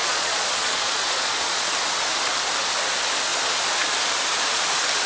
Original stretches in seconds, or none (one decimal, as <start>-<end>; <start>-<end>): 1.7-5.1